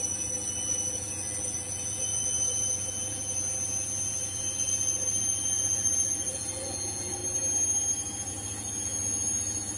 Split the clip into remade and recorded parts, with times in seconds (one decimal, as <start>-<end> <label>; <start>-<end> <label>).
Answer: 0.0-7.2 remade; 7.2-8.3 recorded; 8.3-9.8 remade